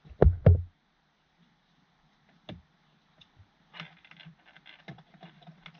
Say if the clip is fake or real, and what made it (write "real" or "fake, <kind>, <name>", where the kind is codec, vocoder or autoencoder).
real